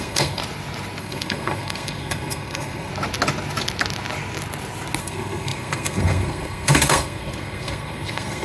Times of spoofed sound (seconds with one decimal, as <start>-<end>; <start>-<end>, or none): 0.0-0.4; 1.0-2.9; 5.0-8.4